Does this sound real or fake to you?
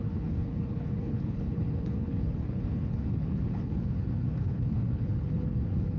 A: fake